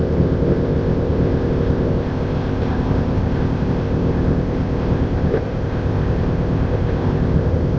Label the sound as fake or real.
fake